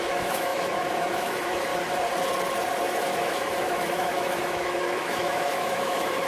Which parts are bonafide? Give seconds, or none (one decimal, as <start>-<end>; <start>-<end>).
1.7-2.8